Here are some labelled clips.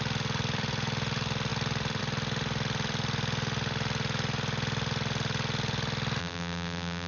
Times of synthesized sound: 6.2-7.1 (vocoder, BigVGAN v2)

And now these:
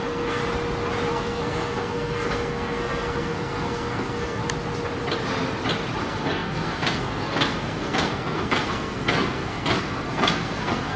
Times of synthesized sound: 0.0-0.4 (codec, SNAC); 1.1-4.4; 6.0-11.0

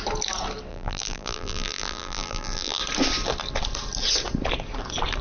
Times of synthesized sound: 0.7-2.8 (vocoder, BigVGAN v2)

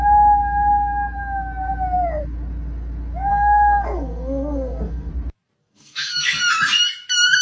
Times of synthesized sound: 3.3-5.1 (codec, SNAC); 5.6-6.4

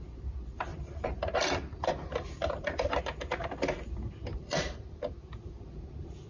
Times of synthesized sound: 0.7-3.0 (vocoder, BigVGAN v2); 4.3-5.0

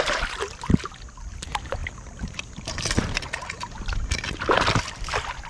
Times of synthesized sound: 1.8-4.6 (vocoder, BigVGAN v2)